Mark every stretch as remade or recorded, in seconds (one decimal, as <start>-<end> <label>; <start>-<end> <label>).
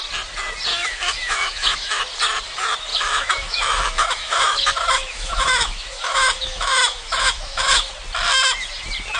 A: 0.0-0.7 recorded; 0.7-2.0 remade; 2.0-2.9 recorded; 2.9-7.9 remade; 7.9-9.2 recorded